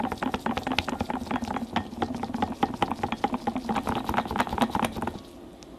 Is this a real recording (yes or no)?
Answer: yes